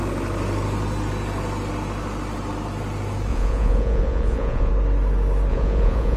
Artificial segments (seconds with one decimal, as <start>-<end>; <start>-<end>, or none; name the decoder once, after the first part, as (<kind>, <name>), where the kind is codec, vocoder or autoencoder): 3.3-4.7 (vocoder, Vocos); 5.5-6.2